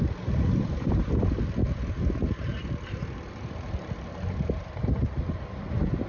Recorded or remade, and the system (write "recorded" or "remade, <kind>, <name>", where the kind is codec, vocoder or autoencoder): recorded